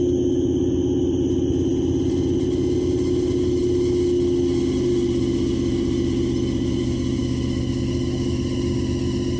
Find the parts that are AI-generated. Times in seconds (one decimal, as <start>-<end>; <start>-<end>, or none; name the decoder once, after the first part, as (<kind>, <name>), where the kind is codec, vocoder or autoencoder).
none